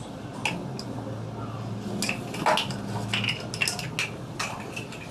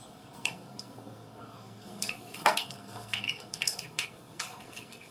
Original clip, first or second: first